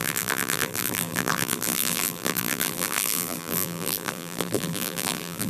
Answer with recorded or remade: remade